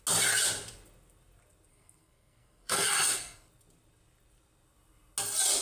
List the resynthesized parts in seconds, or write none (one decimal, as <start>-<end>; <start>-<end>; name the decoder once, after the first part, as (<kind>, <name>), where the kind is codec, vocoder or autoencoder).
1.7-3.5 (codec, SNAC)